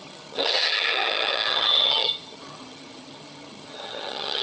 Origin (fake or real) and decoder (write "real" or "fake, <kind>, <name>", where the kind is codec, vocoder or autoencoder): fake, vocoder, HiFi-GAN